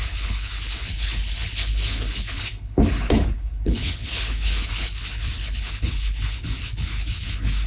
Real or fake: fake